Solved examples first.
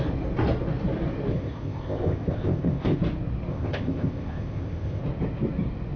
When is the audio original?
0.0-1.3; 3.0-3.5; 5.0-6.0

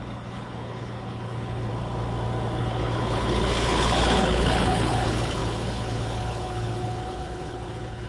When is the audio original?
1.7-2.6

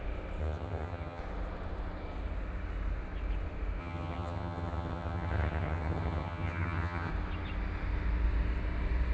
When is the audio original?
0.0-0.4; 1.2-3.8; 7.1-9.1

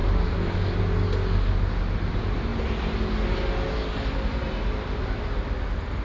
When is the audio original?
0.0-6.0